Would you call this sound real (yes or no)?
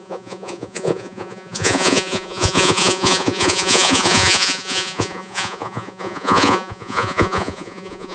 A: no